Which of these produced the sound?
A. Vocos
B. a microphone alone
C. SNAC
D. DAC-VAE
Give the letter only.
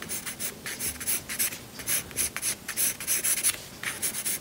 B